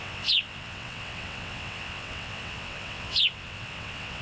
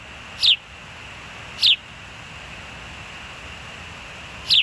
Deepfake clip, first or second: first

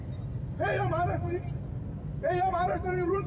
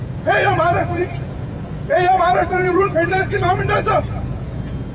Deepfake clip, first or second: second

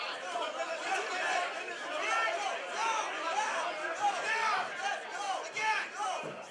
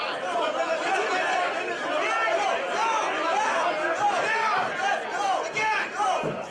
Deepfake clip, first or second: first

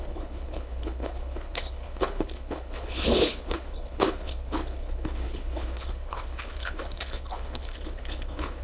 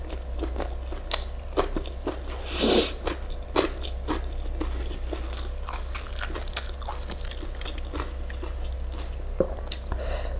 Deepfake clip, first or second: first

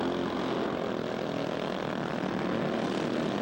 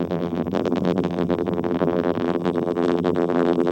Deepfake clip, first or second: second